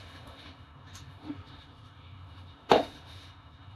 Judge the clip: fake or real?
fake